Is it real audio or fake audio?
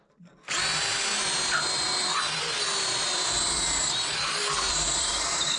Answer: real